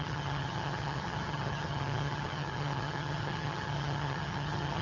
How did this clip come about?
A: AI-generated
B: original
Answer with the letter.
A